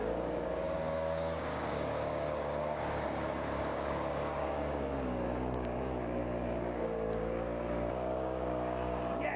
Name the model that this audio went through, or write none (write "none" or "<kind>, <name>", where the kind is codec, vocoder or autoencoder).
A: codec, DAC